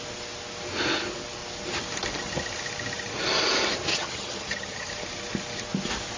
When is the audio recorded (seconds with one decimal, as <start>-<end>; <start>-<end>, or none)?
0.0-3.9; 4.9-6.2